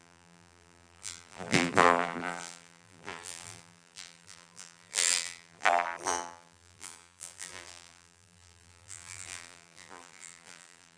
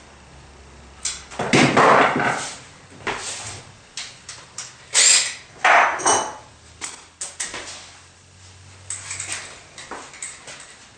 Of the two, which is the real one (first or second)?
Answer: second